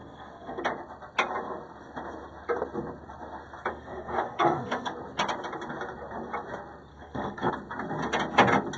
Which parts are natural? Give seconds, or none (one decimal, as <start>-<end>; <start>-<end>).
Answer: 0.6-3.7; 4.9-6.9; 7.5-8.8